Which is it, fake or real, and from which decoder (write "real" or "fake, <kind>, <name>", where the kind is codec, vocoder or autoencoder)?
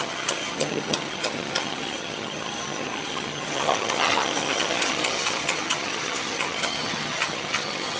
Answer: fake, vocoder, HiFi-GAN